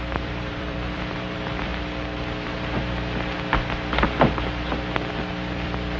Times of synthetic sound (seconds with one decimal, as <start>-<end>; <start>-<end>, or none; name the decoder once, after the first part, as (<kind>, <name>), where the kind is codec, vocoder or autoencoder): 0.0-1.7 (vocoder, BigVGAN v2); 5.2-6.0